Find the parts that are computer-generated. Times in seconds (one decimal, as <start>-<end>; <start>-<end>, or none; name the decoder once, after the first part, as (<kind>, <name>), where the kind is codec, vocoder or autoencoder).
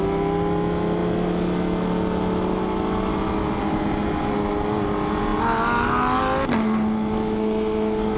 none